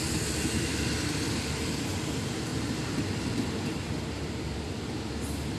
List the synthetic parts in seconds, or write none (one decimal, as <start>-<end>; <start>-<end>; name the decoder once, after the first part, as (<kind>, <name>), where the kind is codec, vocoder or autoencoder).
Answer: none